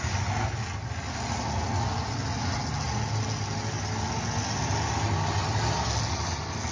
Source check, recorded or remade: recorded